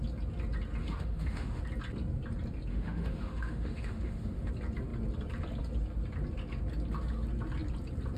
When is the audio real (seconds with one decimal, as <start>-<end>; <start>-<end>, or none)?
0.0-0.8; 1.6-2.7; 4.5-8.2